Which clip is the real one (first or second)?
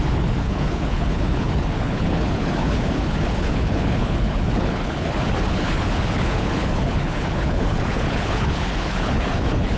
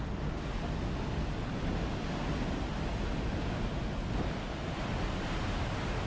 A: second